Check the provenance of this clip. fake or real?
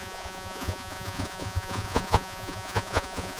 fake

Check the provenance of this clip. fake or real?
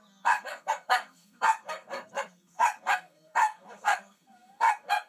fake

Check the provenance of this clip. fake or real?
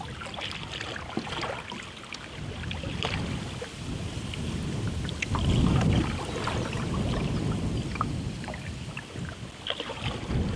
real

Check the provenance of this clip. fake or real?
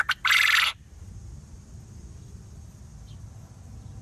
real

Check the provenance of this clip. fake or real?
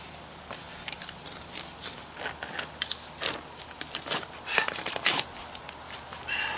real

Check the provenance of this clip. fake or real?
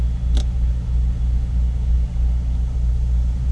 real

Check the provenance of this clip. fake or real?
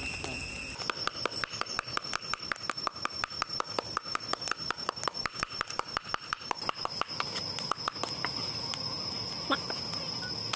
real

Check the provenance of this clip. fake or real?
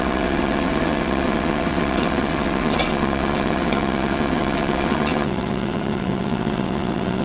fake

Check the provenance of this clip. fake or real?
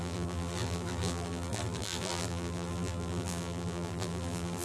fake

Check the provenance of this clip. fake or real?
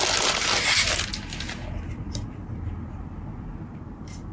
real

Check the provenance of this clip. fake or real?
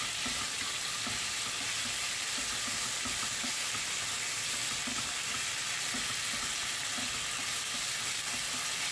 real